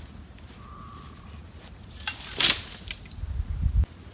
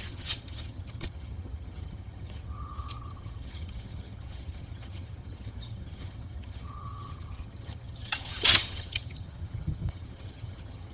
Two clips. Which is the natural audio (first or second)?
first